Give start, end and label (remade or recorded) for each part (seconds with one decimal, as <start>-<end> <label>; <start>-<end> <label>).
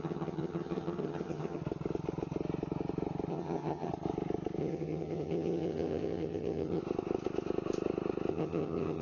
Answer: 0.0-1.6 remade; 1.6-3.3 recorded; 3.3-3.9 remade; 3.9-4.6 recorded; 4.6-6.8 remade; 6.8-8.3 recorded; 8.3-9.0 remade